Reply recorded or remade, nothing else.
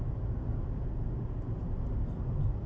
recorded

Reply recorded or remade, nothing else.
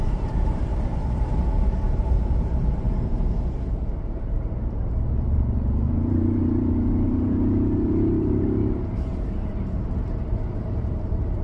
remade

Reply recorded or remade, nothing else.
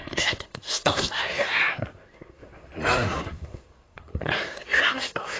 remade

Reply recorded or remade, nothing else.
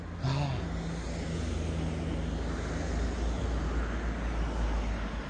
recorded